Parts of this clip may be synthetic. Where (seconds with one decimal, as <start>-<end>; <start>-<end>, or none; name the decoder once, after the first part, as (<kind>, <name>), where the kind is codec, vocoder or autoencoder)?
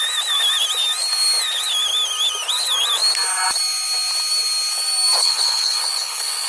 5.2-6.5 (codec, HILCodec)